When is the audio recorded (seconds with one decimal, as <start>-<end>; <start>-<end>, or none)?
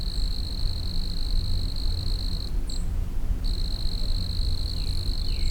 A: 1.9-4.4